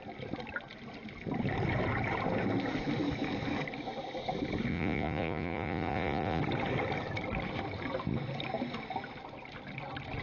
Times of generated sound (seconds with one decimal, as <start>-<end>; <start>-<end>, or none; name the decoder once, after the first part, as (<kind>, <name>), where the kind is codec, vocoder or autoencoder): 4.7-6.4 (vocoder, Vocos)